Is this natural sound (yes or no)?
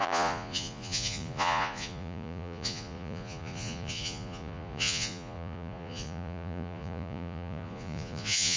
no